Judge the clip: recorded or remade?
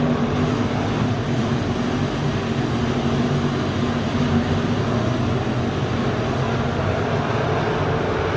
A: recorded